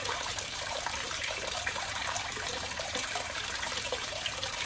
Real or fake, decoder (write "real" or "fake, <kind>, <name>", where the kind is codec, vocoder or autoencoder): fake, vocoder, BigVGAN v2